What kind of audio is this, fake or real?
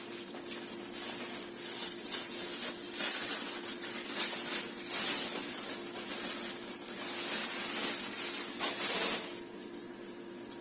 real